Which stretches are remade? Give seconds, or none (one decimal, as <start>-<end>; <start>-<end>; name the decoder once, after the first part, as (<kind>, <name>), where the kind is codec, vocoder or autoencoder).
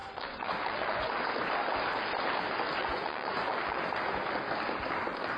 0.0-1.1 (vocoder, Vocos); 2.8-3.9